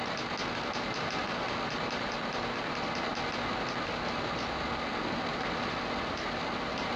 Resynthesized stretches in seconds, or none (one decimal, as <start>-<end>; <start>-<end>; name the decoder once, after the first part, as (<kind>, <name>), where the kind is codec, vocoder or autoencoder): none